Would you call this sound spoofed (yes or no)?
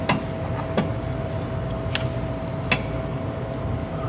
no